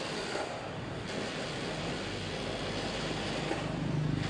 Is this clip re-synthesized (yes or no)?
no